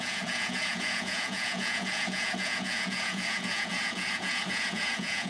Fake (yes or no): yes